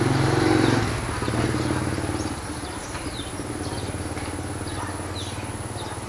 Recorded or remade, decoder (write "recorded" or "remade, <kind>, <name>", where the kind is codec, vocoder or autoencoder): recorded